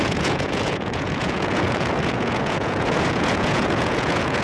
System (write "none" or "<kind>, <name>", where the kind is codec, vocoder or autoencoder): vocoder, Vocos